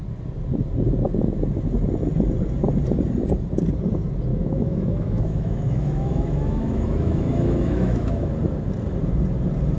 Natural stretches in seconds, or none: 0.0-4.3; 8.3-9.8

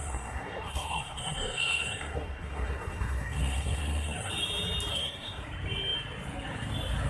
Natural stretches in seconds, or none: 4.3-4.9; 5.4-7.1